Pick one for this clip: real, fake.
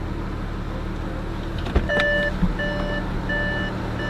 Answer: real